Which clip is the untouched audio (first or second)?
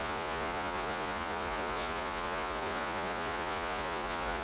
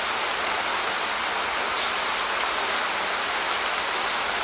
second